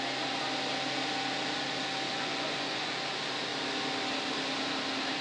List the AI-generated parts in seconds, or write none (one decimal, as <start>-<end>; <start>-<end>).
2.1-2.9